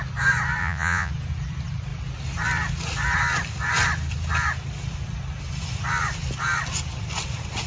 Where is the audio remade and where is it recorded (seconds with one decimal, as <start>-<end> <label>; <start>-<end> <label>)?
0.0-0.6 recorded; 0.6-1.1 remade; 1.1-7.7 recorded